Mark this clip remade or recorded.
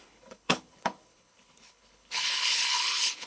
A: remade